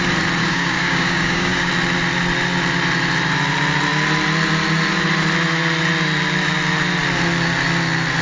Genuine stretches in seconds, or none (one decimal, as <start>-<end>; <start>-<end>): 0.0-0.4; 1.7-8.2